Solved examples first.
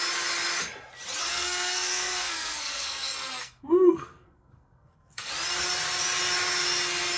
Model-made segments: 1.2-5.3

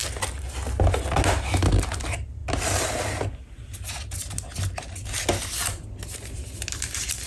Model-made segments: none

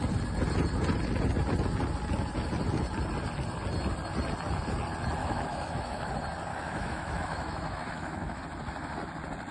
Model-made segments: 5.2-6.1; 6.5-8.4

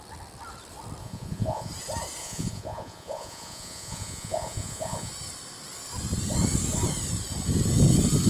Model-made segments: 1.0-1.7; 2.2-5.1

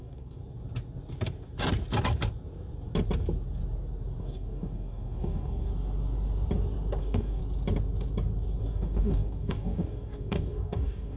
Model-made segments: 0.0-0.4; 4.2-5.7; 7.0-7.4; 8.6-11.2